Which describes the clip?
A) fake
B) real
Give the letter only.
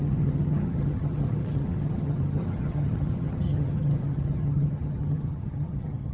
A